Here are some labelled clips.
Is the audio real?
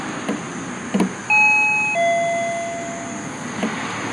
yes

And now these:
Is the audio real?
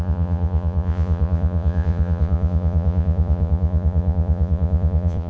no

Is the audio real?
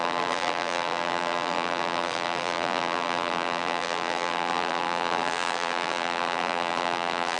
no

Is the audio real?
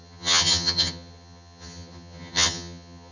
no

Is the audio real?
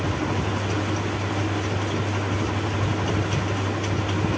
yes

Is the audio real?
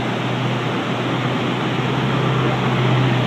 yes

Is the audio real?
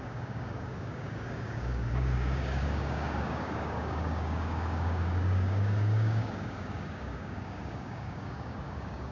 no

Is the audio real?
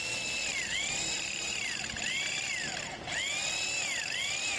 yes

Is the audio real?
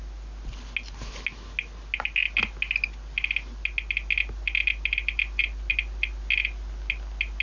yes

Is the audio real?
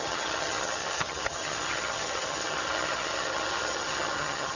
no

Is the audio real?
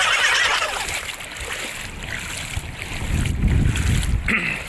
yes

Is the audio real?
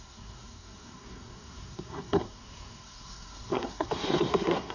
no